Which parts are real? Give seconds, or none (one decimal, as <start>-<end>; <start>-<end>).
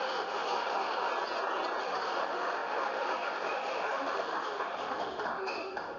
1.1-1.8